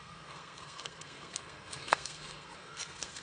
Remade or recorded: remade